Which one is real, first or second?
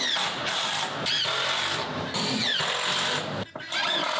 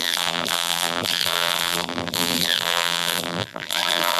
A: first